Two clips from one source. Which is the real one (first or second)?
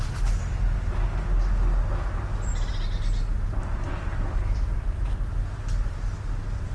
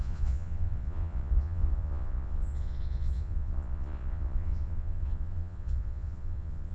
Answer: first